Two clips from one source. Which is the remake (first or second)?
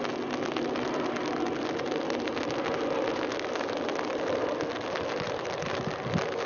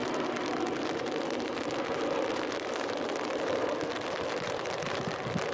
second